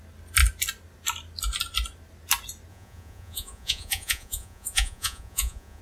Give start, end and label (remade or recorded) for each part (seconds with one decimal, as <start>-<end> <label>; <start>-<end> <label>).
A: 0.0-2.7 recorded; 2.7-5.8 remade